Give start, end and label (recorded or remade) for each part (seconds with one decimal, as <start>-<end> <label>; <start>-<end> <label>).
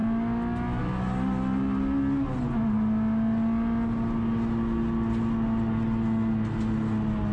0.0-7.3 recorded